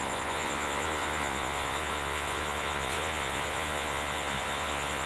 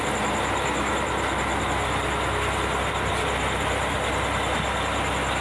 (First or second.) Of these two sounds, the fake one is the first